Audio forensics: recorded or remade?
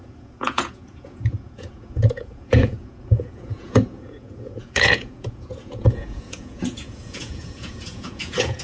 remade